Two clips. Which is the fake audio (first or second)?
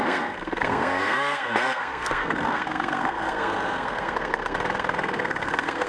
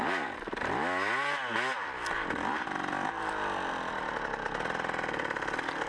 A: first